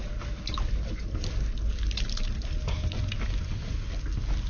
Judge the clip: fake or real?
real